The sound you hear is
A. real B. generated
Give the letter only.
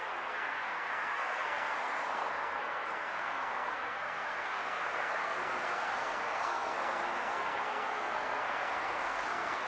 B